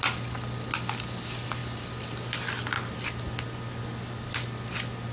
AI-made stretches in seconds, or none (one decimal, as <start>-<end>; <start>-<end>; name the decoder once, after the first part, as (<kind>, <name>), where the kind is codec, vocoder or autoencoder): none